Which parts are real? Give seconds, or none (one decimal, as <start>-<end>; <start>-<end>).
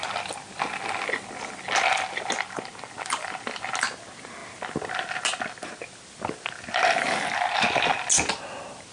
0.0-8.9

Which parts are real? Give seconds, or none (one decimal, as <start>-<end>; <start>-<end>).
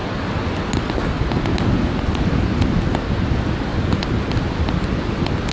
0.0-5.5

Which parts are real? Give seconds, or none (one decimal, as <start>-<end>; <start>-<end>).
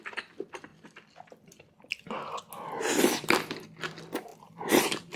0.0-5.2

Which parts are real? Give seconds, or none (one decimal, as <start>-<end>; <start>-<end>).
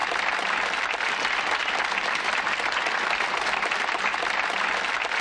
0.0-5.2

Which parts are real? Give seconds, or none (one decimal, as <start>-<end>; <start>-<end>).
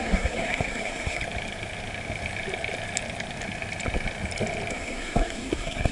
1.2-4.7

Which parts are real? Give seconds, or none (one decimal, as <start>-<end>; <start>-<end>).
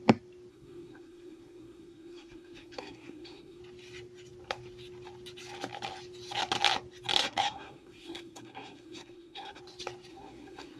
0.0-0.5; 3.6-7.2; 9.6-10.1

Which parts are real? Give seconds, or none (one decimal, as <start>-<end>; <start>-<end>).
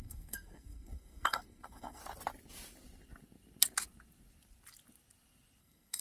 2.0-5.6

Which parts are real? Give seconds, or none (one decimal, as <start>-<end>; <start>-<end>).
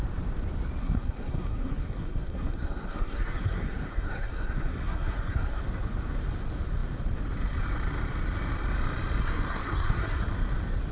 0.0-0.8; 5.6-9.2; 10.2-10.9